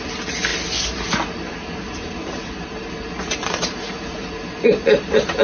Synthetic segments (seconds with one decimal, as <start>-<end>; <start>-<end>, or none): none